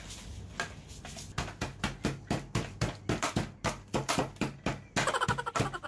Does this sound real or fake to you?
real